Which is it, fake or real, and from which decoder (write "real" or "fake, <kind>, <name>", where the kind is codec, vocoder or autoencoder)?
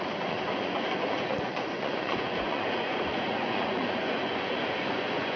fake, vocoder, Vocos